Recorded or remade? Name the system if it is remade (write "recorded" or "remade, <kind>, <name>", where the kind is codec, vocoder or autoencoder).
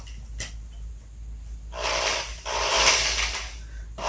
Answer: recorded